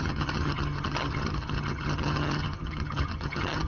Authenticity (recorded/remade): remade